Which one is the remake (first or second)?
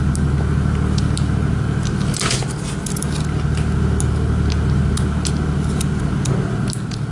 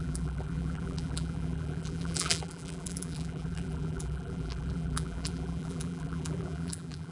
second